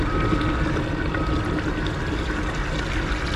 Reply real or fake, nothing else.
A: real